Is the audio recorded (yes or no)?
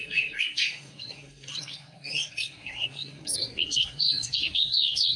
no